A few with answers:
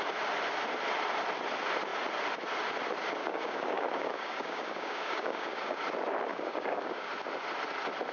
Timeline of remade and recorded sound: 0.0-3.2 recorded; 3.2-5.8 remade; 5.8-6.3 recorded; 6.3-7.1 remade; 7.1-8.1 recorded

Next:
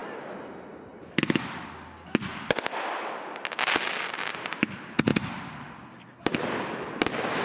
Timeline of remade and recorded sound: 0.0-7.4 recorded

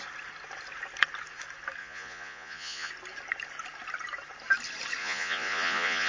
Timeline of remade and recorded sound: 0.0-1.8 recorded; 1.8-2.9 remade; 2.9-5.0 recorded; 5.0-6.1 remade

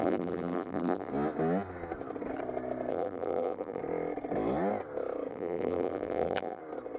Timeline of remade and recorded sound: 0.0-1.1 remade; 1.1-2.9 recorded; 2.9-3.8 remade; 3.8-5.3 recorded; 5.3-6.6 remade; 6.6-7.0 recorded

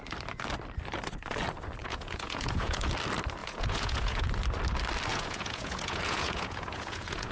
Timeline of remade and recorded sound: 0.0-1.8 recorded; 1.8-2.9 remade; 2.9-3.4 recorded; 3.4-4.3 remade; 4.3-5.1 recorded; 5.1-7.3 remade